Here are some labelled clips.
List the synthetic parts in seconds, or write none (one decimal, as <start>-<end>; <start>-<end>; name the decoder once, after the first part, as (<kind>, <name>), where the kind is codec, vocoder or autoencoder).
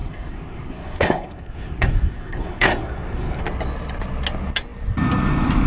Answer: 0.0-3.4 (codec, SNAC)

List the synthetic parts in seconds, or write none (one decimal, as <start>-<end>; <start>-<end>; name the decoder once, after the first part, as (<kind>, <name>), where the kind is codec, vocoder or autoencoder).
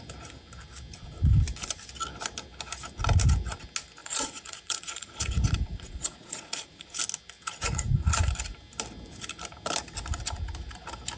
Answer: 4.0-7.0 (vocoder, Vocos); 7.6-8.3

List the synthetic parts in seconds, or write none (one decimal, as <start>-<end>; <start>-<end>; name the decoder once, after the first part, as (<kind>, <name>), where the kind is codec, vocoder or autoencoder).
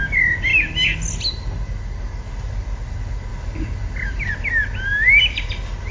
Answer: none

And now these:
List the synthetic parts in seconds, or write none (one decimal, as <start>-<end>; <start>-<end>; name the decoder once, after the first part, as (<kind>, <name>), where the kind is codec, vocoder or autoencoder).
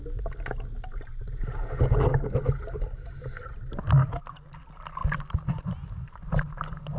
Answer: none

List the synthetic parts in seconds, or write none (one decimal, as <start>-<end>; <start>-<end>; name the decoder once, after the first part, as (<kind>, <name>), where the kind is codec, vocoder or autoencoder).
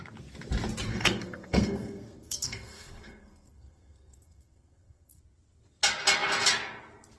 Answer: 0.9-5.2 (codec, SNAC)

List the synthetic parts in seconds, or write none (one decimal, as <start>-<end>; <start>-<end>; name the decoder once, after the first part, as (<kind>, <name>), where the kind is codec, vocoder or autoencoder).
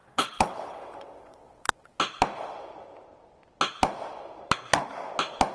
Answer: 0.0-2.0 (vocoder, WaveNeXt)